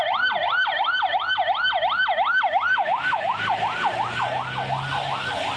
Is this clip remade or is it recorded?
recorded